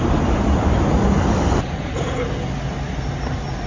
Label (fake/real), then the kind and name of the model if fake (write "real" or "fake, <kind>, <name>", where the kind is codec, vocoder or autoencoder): real